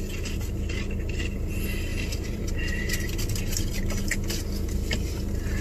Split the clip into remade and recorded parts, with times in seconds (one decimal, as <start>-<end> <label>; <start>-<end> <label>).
0.0-1.9 recorded; 1.9-4.0 remade; 4.0-5.6 recorded